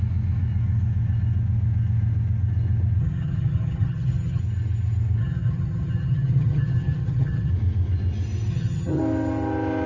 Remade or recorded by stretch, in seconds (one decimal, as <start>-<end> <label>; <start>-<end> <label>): 0.0-3.0 recorded; 3.0-4.4 remade; 4.4-5.2 recorded; 5.2-7.5 remade; 7.5-8.5 recorded; 8.5-9.0 remade; 9.0-9.9 recorded